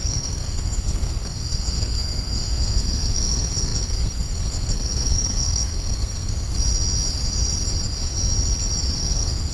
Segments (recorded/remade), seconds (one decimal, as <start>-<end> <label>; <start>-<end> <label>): 0.0-6.3 remade; 6.3-9.0 recorded; 9.0-9.5 remade